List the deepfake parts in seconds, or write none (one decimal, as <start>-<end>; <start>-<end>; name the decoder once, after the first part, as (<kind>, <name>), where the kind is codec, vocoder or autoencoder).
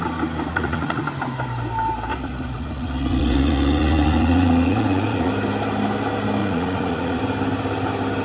0.5-1.0 (vocoder, Vocos); 2.1-5.3; 6.4-7.2